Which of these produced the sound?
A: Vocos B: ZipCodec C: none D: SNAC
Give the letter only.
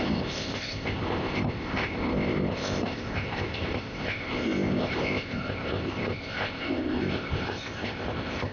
B